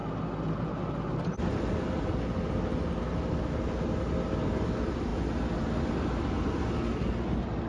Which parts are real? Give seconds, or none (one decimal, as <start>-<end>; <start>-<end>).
0.0-7.7